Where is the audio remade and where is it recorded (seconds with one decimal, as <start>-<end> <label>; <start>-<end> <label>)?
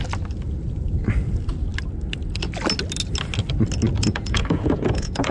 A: 0.0-4.0 recorded; 4.0-5.3 remade